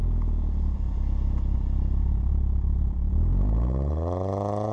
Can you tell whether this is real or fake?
fake